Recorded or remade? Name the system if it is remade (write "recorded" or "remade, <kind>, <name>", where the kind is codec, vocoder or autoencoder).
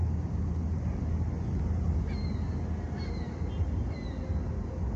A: recorded